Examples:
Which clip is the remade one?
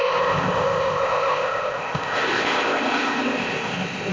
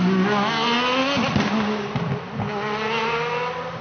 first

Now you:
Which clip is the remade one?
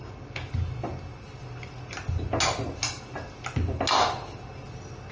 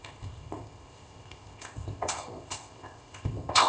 second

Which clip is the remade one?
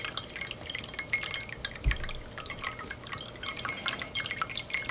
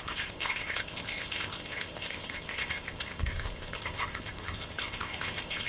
second